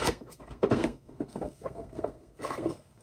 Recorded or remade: remade